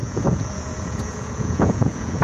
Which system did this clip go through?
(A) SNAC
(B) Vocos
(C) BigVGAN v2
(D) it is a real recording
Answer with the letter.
B